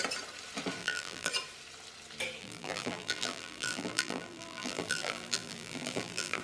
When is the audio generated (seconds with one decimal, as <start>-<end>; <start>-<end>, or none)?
0.8-1.3; 2.4-6.4

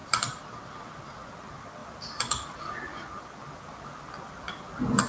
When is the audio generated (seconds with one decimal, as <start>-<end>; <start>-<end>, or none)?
0.0-1.3